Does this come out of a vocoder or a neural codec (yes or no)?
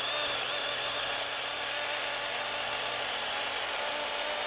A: no